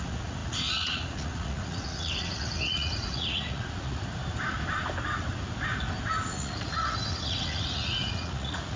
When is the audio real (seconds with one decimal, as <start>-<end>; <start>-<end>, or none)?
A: 4.2-6.2